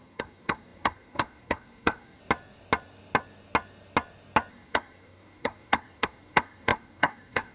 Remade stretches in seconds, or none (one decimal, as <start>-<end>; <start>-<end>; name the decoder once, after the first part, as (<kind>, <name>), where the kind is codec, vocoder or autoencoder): 0.0-2.2 (codec, SNAC); 4.5-7.5